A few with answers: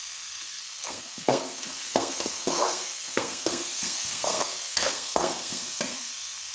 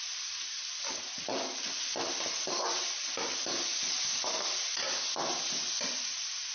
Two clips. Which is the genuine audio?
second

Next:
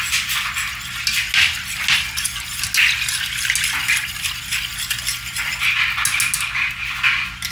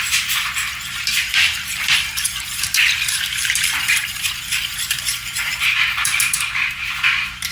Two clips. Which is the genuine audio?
first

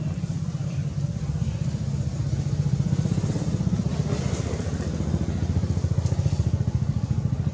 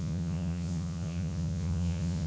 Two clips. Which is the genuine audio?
first